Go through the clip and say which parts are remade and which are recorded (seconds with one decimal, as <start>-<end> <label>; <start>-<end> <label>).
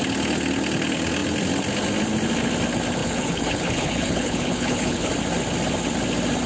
0.0-3.0 recorded; 3.0-5.1 remade; 5.1-6.5 recorded